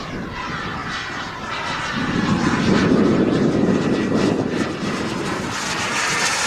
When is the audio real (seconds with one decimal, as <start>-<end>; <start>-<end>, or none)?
0.0-6.5